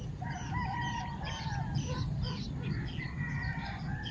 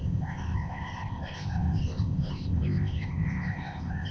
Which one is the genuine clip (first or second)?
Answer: first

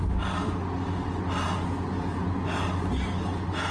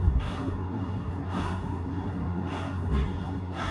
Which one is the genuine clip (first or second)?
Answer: first